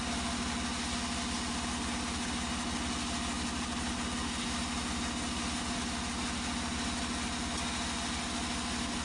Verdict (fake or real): real